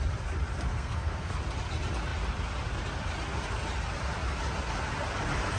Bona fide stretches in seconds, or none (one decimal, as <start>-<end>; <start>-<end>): 0.0-0.7; 1.3-5.6